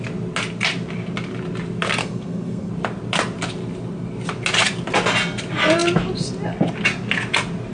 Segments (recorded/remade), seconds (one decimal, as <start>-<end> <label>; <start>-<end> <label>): 0.0-2.0 recorded; 2.0-2.7 remade; 2.7-7.7 recorded